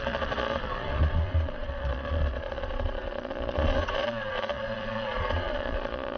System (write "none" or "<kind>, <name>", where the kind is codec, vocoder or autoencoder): vocoder, Vocos